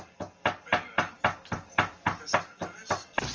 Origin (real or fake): real